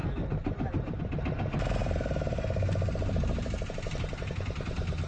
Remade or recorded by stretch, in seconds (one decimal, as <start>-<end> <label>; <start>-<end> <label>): 0.0-1.8 recorded; 1.8-4.3 remade; 4.3-5.1 recorded